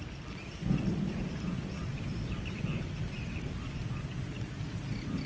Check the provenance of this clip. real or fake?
real